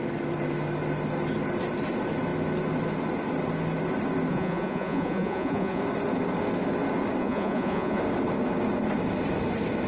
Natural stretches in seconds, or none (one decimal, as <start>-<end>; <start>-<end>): 0.0-4.3; 5.8-7.2; 8.0-9.9